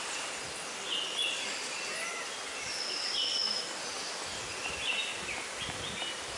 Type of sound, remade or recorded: recorded